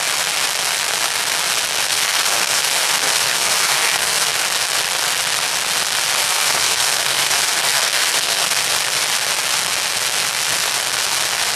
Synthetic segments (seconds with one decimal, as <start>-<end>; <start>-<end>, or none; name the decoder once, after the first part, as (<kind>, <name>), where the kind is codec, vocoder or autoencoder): 1.9-4.3 (codec, SNAC); 6.2-8.6